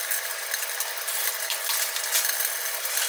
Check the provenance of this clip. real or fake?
real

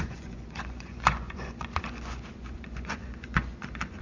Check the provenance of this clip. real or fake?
fake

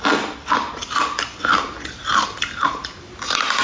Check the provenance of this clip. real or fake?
real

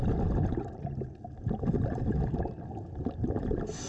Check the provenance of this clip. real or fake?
real